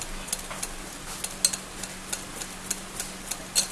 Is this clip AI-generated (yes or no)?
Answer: no